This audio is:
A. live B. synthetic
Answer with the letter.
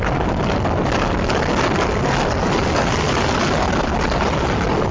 A